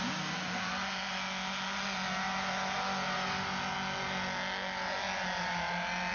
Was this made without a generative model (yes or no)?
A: yes